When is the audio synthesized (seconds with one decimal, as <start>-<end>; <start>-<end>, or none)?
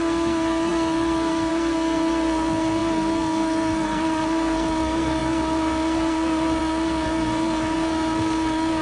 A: 0.0-8.8